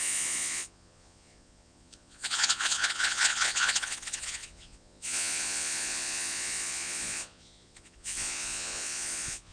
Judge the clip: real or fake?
fake